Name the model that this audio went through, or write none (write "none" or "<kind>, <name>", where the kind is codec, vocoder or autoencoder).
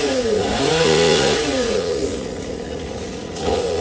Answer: vocoder, Vocos